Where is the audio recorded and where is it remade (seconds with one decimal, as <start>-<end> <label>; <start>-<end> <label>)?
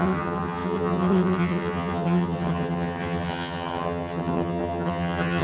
0.0-5.4 remade